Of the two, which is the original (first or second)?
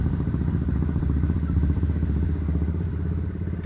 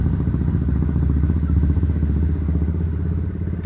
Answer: second